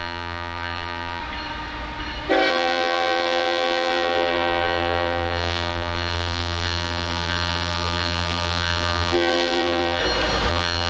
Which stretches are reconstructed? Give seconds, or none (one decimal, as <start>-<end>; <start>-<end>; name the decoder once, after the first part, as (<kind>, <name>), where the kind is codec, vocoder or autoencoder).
0.0-1.2 (vocoder, BigVGAN v2); 2.5-10.0; 10.5-10.9